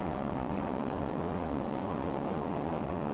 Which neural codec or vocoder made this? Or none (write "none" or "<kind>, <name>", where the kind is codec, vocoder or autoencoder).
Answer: vocoder, WaveNeXt